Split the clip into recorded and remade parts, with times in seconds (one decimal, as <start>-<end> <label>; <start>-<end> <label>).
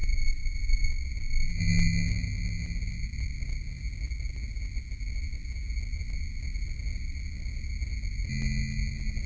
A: 0.0-9.3 recorded